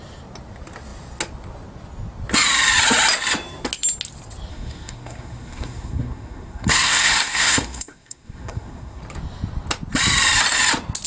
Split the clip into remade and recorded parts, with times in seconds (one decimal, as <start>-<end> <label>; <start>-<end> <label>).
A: 0.0-4.5 recorded; 4.5-9.0 remade; 9.0-11.1 recorded